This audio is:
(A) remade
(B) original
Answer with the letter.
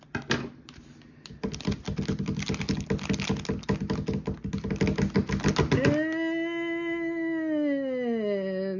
B